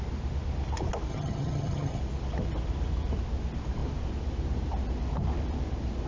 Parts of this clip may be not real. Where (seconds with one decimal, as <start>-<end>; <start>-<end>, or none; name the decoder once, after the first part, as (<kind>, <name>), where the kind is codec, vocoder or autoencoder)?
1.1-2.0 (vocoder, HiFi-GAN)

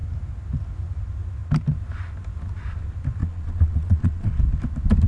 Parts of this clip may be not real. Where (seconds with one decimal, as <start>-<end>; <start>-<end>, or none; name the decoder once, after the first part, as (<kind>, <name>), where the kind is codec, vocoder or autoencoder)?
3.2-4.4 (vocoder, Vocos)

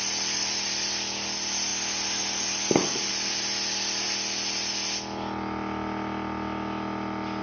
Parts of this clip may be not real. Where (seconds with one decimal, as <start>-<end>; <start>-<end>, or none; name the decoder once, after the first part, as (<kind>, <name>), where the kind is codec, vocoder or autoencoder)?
none

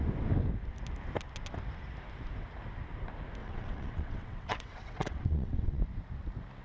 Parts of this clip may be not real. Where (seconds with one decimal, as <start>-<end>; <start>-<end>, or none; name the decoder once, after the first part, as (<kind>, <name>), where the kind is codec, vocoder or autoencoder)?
3.4-5.8 (vocoder, WaveNeXt)

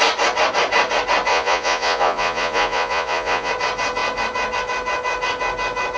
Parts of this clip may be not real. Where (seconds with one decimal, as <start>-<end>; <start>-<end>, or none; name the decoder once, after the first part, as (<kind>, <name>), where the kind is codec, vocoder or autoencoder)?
1.3-3.5 (vocoder, Vocos)

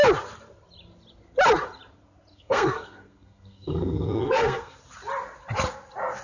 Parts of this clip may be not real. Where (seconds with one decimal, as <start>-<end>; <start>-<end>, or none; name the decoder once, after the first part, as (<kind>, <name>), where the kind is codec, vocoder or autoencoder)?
2.3-4.7 (codec, SNAC)

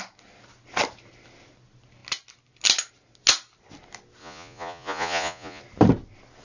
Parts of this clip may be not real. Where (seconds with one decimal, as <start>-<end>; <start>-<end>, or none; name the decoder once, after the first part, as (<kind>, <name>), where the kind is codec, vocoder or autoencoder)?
4.2-5.6 (vocoder, Vocos)

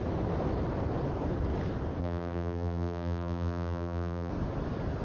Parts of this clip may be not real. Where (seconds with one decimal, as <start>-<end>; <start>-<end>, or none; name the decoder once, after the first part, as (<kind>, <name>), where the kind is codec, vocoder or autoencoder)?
2.0-4.3 (vocoder, BigVGAN v2)